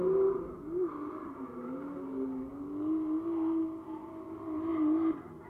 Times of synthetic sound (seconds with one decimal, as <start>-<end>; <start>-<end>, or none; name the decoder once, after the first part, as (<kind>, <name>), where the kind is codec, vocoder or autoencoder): none